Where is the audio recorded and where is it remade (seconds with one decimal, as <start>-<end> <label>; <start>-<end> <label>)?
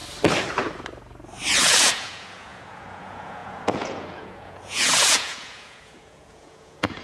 0.0-1.6 recorded; 1.6-7.0 remade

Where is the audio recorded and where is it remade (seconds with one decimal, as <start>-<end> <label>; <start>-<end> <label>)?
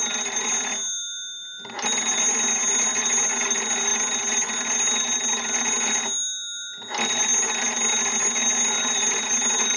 0.0-9.8 recorded